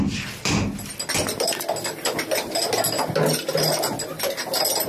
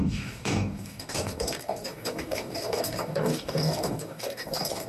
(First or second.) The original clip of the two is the first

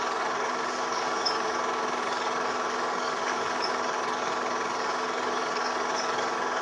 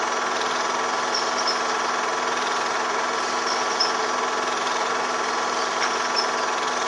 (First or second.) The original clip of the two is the second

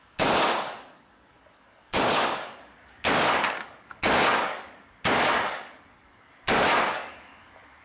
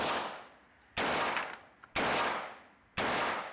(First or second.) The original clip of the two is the second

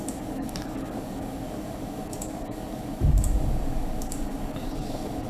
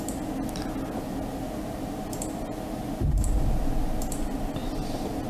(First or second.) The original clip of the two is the second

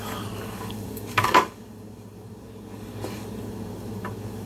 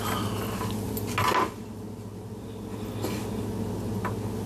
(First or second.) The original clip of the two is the second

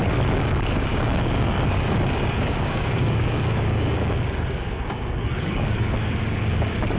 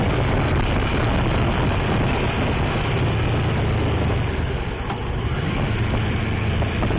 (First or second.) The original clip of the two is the second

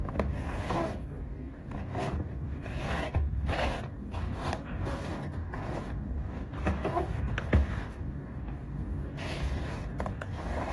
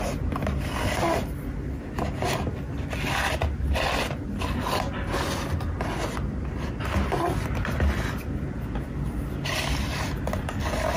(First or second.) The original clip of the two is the second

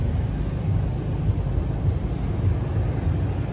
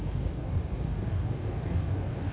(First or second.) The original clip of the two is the first